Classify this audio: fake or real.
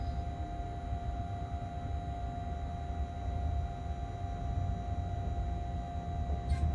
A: real